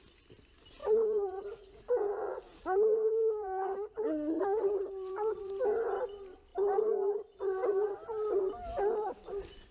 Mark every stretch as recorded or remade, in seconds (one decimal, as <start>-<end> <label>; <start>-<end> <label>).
0.0-0.8 recorded; 0.8-5.6 remade; 5.6-9.7 recorded